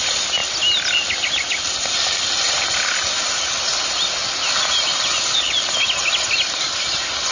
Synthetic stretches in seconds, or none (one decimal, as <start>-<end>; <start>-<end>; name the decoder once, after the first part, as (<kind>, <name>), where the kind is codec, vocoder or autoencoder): none